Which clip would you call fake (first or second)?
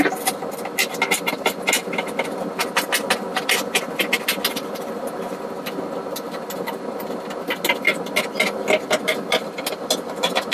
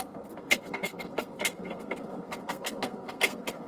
second